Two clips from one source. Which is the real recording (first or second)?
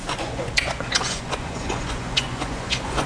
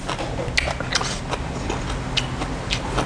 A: second